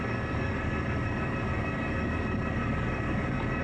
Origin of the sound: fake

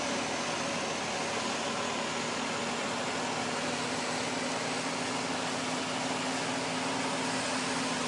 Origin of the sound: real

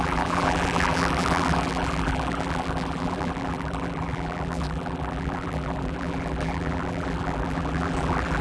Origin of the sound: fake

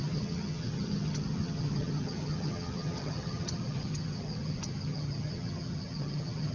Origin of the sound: fake